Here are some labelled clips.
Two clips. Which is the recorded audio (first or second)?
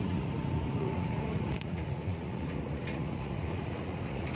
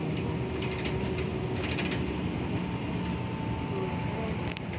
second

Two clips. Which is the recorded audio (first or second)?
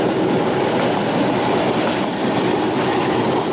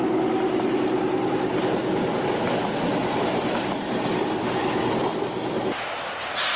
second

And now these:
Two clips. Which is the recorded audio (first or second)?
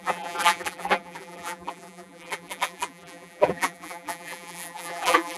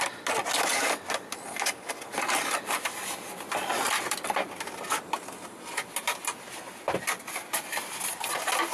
second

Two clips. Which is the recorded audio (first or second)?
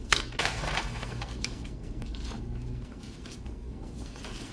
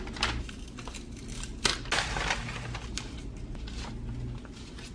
second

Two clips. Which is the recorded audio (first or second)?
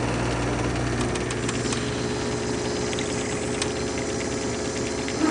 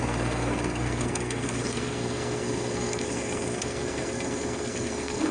first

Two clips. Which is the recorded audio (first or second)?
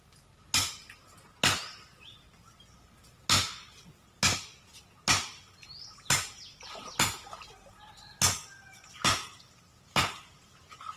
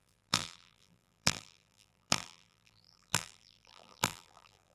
first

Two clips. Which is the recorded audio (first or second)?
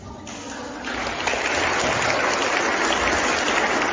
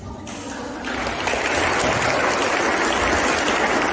first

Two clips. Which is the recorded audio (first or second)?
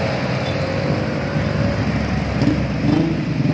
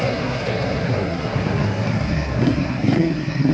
first